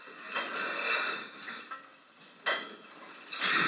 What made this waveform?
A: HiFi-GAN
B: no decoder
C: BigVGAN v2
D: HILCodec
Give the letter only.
B